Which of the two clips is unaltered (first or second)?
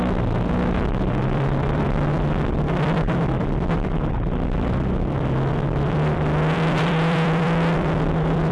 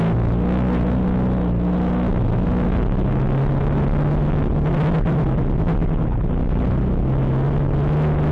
second